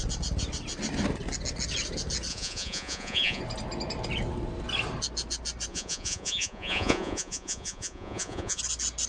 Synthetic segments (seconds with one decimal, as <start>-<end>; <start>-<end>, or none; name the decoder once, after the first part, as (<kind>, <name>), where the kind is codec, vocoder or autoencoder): 2.3-3.4 (vocoder, Vocos); 5.7-8.6